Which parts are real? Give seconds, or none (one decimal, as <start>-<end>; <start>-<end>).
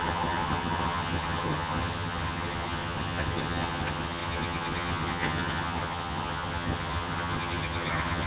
none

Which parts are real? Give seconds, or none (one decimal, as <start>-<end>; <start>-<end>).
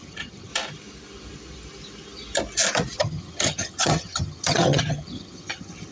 0.5-3.0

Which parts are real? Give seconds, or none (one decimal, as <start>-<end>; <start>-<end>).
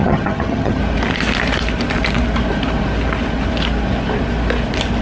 0.8-5.0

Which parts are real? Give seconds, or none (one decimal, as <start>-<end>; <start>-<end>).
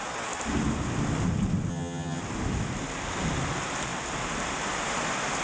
0.0-1.7; 2.2-5.4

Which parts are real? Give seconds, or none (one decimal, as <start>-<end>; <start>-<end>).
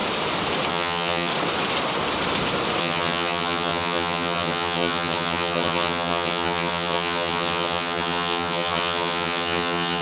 0.0-0.7; 1.3-2.8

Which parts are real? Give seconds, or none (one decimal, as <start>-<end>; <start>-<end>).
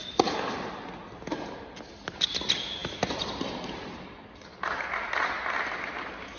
0.0-6.4